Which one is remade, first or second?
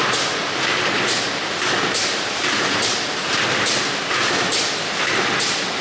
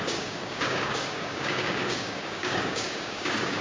second